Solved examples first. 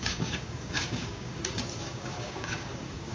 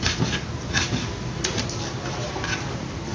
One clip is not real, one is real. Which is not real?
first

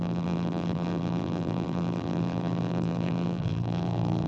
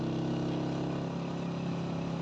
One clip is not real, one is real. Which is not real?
first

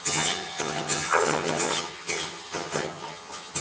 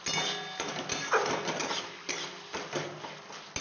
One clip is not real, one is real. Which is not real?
first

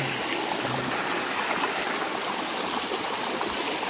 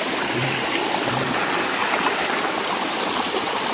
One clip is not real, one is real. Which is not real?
second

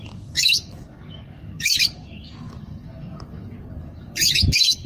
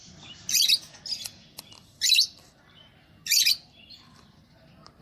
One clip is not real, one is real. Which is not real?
first